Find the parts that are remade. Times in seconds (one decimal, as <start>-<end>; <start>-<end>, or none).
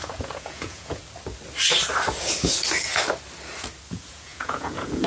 0.0-1.0; 3.9-5.1